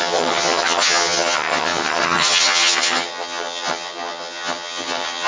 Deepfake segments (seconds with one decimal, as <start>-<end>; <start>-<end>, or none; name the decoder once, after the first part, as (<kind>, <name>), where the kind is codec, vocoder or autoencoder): 0.0-5.3 (vocoder, HiFi-GAN)